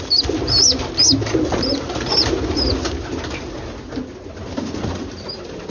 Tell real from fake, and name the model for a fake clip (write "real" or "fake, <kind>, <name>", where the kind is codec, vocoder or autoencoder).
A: real